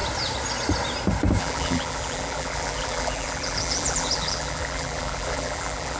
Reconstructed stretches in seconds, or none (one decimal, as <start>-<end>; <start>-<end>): 1.4-6.0